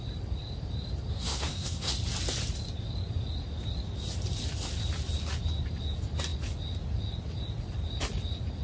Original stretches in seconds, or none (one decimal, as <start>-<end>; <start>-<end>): 0.0-1.1; 1.9-8.6